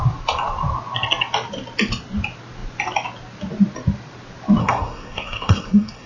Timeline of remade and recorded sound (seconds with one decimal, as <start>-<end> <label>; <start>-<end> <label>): 0.0-4.6 recorded; 4.6-6.1 remade